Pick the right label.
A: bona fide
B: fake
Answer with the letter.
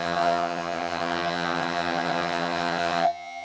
B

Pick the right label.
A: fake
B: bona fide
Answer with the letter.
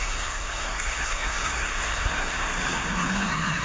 A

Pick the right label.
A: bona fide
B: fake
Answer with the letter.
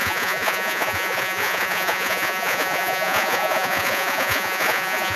B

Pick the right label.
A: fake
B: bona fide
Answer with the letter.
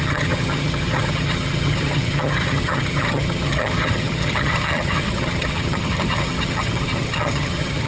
A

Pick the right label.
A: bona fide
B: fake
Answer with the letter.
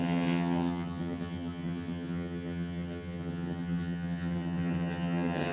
B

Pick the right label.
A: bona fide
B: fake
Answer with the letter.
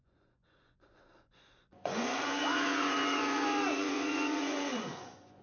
B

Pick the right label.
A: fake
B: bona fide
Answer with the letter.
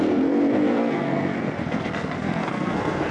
A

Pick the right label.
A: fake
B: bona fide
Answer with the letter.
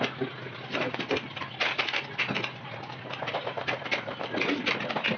B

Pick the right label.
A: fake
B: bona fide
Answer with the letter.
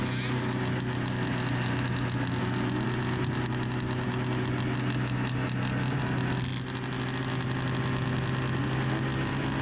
B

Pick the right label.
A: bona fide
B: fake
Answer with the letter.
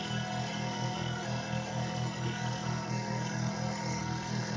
B